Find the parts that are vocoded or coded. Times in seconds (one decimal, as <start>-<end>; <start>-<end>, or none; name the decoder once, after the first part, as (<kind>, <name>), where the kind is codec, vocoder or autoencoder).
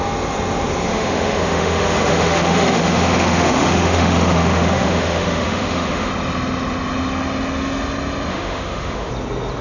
0.9-6.1 (autoencoder, DAC-VAE); 8.3-9.1